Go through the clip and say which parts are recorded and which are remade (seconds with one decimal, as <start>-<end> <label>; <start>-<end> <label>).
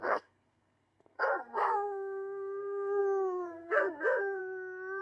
0.0-4.4 remade; 4.4-5.0 recorded